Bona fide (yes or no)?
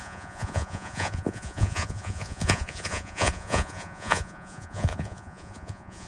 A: no